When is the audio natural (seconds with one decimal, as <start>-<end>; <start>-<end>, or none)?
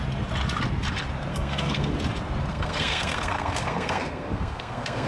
0.0-1.3; 1.9-2.5